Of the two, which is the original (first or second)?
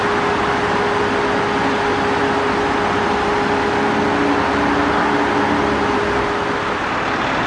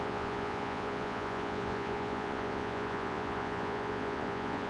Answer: first